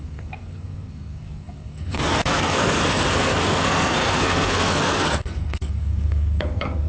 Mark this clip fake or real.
fake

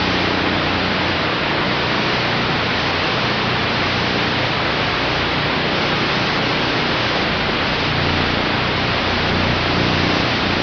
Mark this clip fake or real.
real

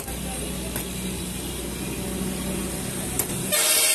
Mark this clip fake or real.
real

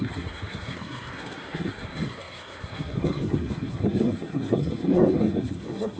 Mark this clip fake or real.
fake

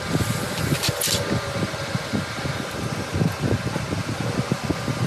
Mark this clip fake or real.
real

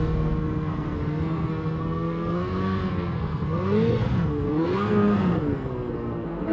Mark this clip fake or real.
fake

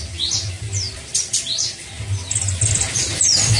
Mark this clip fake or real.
real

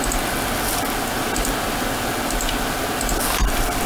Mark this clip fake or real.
real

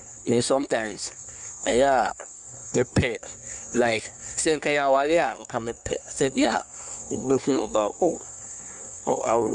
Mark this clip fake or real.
fake